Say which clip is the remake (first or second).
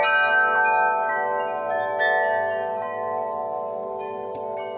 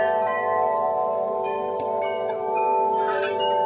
second